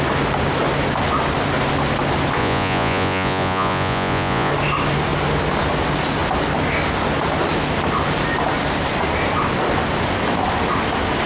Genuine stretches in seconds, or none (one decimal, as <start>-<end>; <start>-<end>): 0.0-2.4; 4.5-11.3